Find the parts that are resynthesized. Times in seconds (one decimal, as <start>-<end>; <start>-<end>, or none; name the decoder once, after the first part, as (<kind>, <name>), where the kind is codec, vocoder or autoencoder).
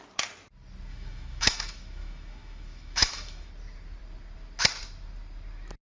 0.9-3.5 (autoencoder, DAC-VAE)